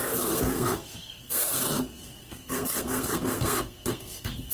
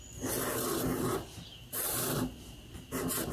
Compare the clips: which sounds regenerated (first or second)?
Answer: first